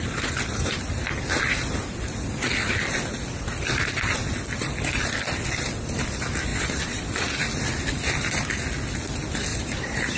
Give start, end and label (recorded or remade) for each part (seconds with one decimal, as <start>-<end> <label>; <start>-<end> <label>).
0.0-9.5 recorded; 9.5-10.2 remade